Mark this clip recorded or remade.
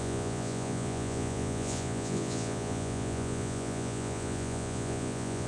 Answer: remade